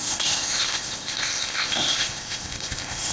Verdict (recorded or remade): remade